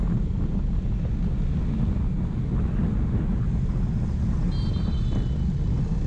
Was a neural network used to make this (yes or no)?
no